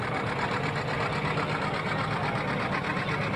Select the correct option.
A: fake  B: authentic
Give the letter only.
B